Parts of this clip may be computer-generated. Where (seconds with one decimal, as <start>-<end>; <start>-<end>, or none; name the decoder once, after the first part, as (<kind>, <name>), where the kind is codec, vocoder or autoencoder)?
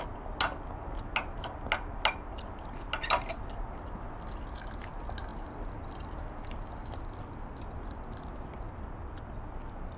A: none